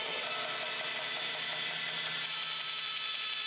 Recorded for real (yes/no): no